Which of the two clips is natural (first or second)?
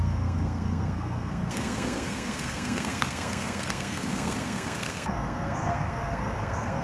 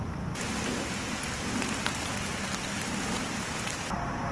second